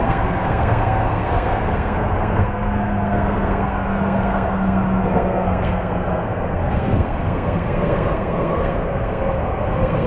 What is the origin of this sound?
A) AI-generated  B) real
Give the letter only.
A